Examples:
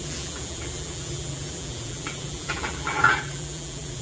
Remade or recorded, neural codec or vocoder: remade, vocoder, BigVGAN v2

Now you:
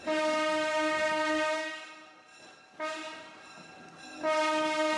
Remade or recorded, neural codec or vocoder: recorded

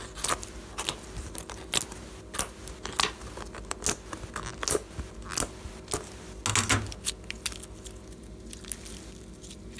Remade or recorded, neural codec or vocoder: recorded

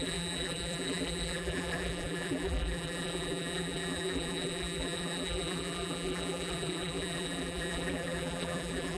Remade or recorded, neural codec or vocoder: remade, vocoder, BigVGAN v2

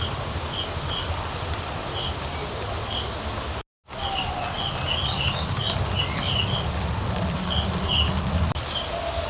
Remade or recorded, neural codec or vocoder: recorded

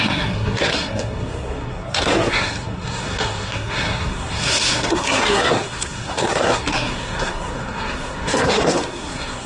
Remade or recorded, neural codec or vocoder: remade, codec, SNAC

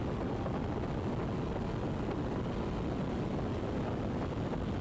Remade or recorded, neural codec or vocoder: recorded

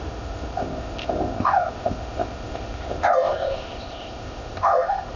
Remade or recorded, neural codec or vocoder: remade, codec, ZipCodec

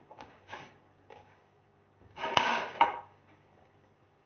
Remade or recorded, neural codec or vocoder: remade, codec, DAC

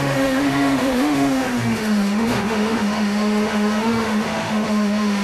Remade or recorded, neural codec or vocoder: remade, autoencoder, DAC-VAE